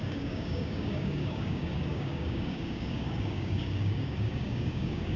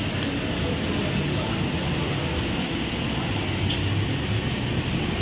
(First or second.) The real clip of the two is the second